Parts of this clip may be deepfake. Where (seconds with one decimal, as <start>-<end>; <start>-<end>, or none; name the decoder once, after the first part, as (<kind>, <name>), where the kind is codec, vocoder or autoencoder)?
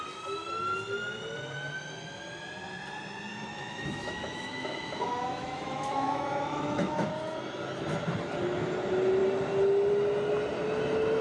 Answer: 3.3-7.1 (autoencoder, DAC-VAE)